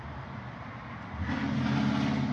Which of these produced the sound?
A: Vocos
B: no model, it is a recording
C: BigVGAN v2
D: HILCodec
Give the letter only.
B